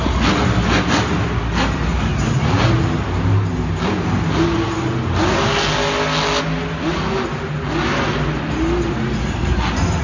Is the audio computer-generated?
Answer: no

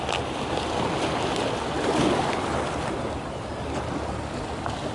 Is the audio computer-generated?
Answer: no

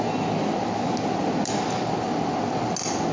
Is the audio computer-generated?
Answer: no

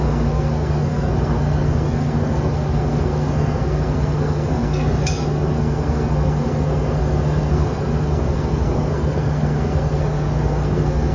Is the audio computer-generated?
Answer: yes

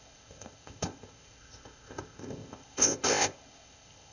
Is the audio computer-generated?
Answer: yes